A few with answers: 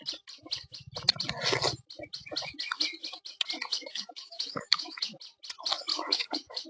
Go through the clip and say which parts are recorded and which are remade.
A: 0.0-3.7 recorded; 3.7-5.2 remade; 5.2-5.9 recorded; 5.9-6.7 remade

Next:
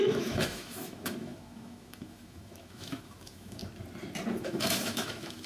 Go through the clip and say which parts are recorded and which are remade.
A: 0.0-3.6 remade; 3.6-4.4 recorded; 4.4-5.5 remade

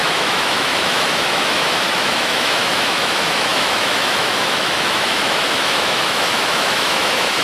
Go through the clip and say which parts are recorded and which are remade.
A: 0.0-7.4 remade

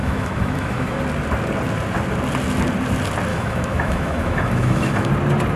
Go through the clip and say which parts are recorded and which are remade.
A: 0.0-1.0 remade; 1.0-3.3 recorded; 3.3-5.1 remade; 5.1-5.6 recorded